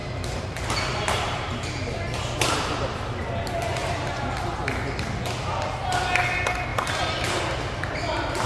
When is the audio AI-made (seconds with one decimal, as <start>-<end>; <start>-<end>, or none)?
0.0-3.3; 3.8-4.3; 6.7-7.4